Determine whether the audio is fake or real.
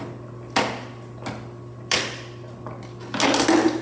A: real